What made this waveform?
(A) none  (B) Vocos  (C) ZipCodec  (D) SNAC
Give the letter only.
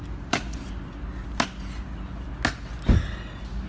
A